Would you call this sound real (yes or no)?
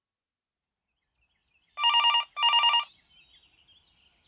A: yes